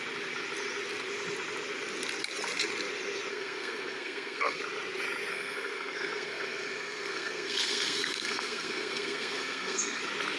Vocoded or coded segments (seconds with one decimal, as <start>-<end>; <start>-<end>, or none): 3.3-4.6; 5.3-10.0